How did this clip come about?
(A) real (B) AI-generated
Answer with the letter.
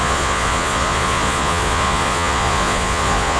B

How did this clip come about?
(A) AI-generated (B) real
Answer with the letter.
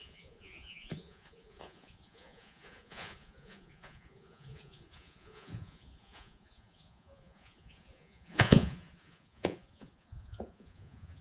A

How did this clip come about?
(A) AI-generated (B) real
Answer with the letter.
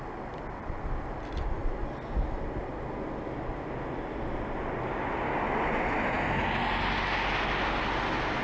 B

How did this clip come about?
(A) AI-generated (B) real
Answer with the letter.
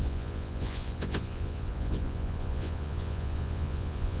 A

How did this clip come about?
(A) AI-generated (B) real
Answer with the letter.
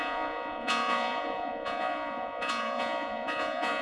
A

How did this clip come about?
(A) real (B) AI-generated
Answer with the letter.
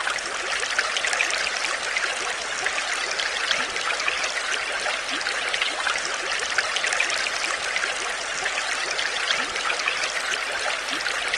A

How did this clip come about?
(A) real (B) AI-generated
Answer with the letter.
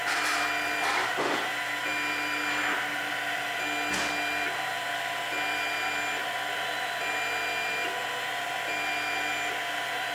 A